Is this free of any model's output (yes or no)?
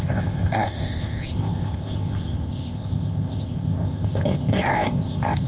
no